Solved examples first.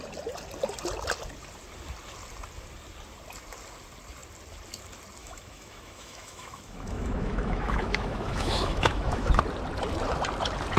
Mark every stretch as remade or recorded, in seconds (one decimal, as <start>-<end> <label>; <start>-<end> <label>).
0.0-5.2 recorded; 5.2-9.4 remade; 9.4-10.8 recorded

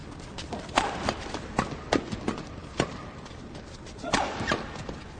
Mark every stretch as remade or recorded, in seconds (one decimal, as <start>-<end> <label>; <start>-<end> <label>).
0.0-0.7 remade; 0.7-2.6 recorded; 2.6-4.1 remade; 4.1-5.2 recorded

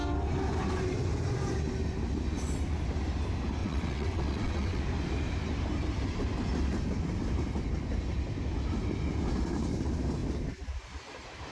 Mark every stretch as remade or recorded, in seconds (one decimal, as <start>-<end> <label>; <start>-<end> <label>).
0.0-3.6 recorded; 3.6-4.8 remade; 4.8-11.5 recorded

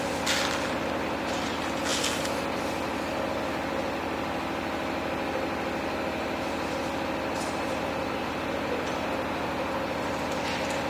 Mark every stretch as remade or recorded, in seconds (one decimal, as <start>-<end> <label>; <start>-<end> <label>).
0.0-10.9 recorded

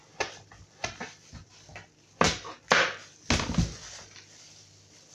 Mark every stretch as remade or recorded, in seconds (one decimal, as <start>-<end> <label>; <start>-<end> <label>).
0.0-1.7 remade; 1.7-4.0 recorded; 4.0-5.1 remade

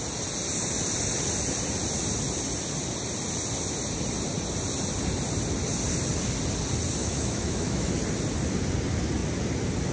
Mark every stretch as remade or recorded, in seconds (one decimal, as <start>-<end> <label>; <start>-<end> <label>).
0.0-7.0 recorded; 7.0-7.9 remade; 7.9-9.9 recorded

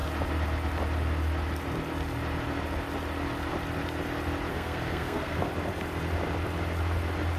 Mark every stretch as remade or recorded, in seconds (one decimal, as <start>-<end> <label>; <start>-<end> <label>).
0.0-4.5 recorded; 4.5-5.5 remade; 5.5-7.4 recorded